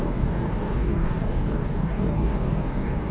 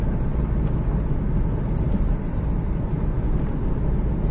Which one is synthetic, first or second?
first